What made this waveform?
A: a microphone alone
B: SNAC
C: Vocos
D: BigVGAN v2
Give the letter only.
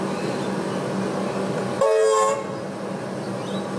A